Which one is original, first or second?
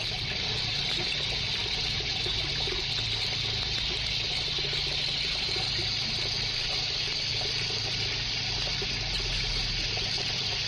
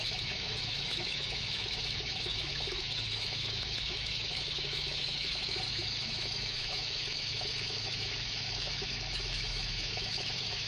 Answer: first